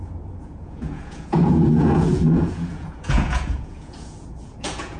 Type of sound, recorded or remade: remade